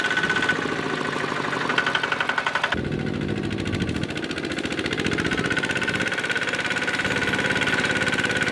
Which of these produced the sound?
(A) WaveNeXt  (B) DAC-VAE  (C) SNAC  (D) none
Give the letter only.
D